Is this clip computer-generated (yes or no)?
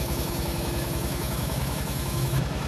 yes